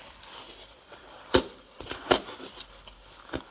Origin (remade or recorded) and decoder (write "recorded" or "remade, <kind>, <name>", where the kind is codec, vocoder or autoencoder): recorded